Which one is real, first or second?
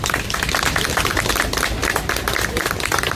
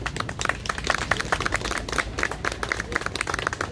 second